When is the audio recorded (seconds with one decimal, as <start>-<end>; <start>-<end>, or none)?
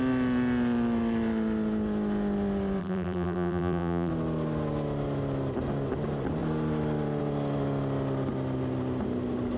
0.0-2.8; 4.1-9.6